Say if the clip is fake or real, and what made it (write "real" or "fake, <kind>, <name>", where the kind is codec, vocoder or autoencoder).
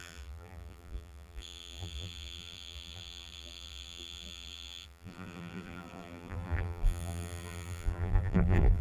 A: fake, vocoder, BigVGAN v2